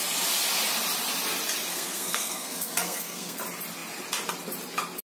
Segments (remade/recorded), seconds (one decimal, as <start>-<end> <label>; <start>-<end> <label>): 0.0-1.7 recorded; 1.7-3.4 remade; 3.4-5.1 recorded

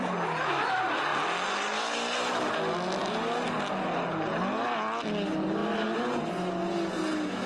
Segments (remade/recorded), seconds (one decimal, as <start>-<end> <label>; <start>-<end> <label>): 0.0-5.6 recorded; 5.6-6.2 remade; 6.2-7.5 recorded